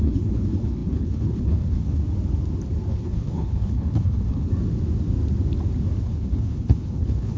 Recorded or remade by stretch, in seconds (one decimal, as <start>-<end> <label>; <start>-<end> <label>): 0.0-2.0 remade; 2.0-2.9 recorded; 2.9-4.5 remade; 4.5-6.0 recorded; 6.0-7.4 remade